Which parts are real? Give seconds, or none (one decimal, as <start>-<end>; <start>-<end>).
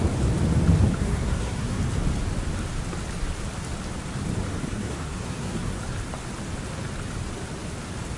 0.0-1.0; 1.8-4.6; 5.8-8.2